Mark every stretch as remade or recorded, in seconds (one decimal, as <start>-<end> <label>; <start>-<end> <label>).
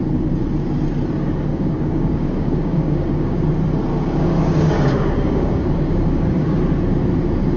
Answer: 0.0-1.5 recorded; 1.5-3.4 remade; 3.4-3.9 recorded; 3.9-6.6 remade; 6.6-7.6 recorded